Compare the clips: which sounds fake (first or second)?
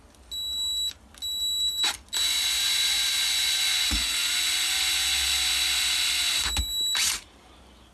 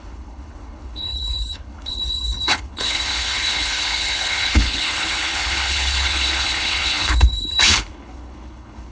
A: second